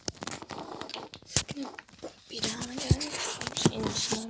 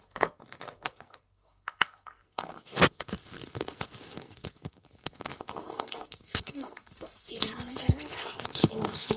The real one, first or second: first